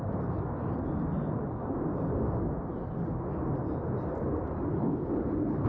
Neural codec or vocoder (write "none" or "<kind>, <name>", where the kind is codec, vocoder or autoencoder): none